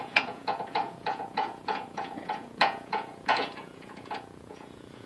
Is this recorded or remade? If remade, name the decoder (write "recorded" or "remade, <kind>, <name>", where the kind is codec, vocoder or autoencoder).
remade, vocoder, Vocos